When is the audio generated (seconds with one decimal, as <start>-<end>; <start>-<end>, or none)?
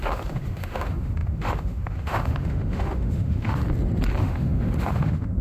0.0-3.6; 4.2-5.4